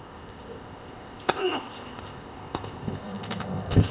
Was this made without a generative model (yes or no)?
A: no